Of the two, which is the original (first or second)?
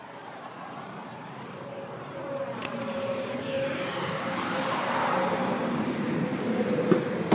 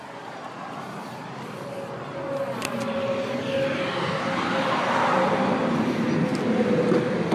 second